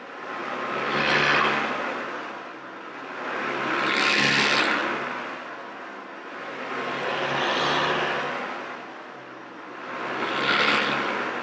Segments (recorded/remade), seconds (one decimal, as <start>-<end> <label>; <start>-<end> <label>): 0.0-11.4 recorded